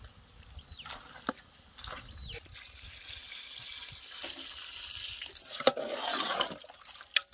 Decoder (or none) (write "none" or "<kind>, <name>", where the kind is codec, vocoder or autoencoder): none